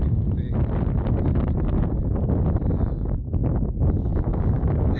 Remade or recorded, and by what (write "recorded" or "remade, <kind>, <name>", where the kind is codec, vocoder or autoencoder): recorded